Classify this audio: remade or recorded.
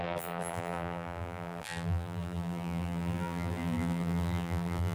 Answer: remade